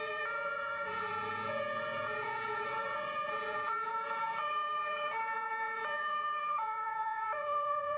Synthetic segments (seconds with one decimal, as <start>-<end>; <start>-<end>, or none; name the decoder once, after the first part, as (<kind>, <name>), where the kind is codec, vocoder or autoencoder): 0.0-8.0 (vocoder, Vocos)